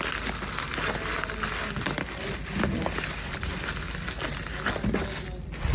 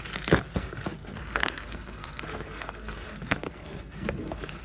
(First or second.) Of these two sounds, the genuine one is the first